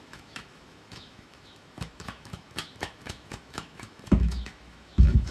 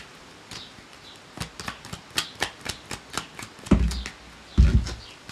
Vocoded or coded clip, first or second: first